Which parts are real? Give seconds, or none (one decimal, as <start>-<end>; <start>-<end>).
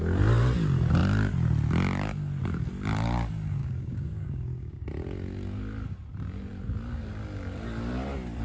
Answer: 0.0-3.6; 4.8-8.4